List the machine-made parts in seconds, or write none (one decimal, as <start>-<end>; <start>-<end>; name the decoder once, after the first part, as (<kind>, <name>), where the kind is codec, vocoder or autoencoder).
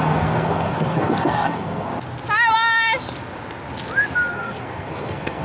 0.0-1.9 (codec, SNAC); 4.3-5.4